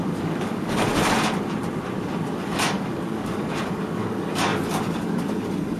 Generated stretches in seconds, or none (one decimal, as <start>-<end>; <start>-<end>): 0.0-0.9; 2.3-5.8